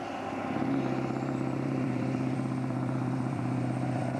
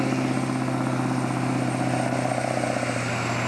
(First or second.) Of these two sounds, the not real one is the first